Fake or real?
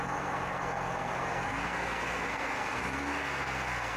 fake